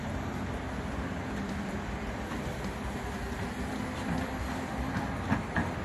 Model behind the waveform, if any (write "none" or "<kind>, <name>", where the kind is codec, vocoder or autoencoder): none